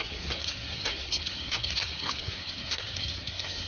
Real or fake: fake